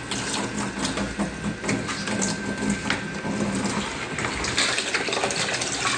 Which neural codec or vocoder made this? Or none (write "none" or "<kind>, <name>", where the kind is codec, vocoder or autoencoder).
none